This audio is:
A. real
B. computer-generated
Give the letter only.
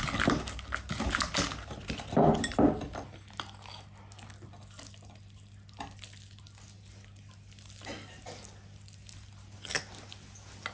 A